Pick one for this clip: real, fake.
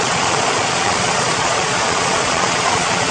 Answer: fake